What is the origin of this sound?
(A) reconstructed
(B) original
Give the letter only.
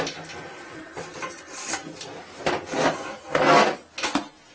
B